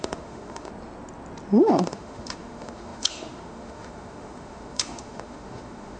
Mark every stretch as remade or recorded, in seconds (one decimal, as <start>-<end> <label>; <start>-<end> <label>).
0.0-0.7 remade; 0.7-1.6 recorded; 1.6-6.0 remade